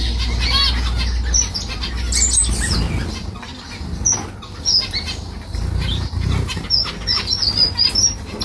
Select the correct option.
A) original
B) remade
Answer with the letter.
A